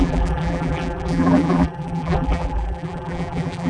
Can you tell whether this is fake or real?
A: fake